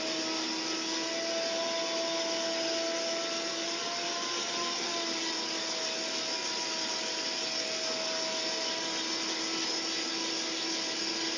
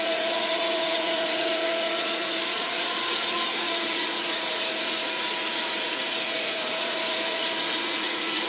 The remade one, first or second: second